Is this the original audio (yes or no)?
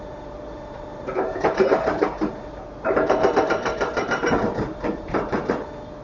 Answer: no